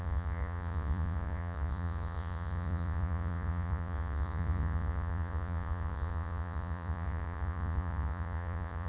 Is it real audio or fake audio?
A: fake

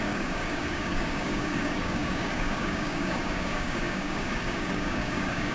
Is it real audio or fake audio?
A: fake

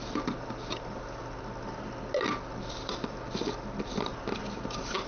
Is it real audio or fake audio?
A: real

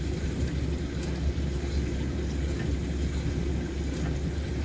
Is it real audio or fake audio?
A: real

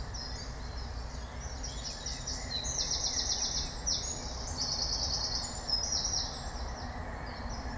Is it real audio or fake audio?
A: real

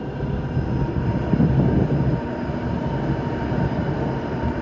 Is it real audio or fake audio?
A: real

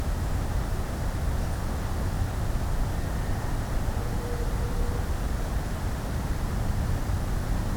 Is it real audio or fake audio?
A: real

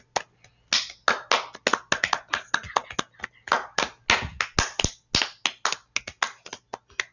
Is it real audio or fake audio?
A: real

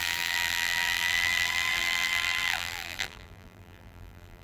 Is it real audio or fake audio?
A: fake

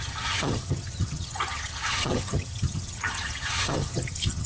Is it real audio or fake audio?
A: fake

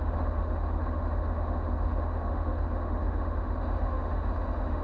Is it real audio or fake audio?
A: fake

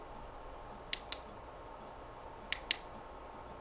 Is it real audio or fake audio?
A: real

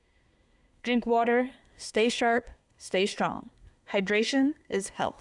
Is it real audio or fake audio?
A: fake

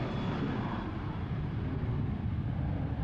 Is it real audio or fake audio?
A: real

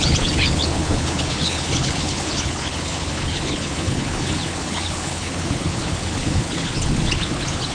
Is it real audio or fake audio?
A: fake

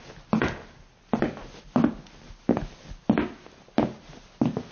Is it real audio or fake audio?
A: real